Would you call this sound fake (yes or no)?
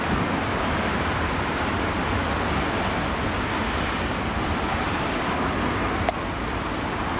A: no